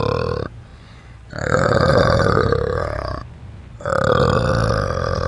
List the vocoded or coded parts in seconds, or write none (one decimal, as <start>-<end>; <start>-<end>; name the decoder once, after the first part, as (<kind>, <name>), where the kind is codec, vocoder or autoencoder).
0.7-3.9 (vocoder, Vocos)